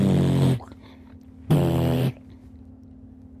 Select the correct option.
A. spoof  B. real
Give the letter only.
B